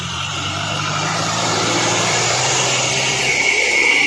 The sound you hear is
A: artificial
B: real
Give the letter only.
A